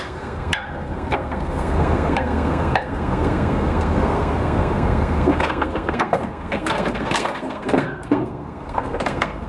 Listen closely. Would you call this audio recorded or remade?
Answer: remade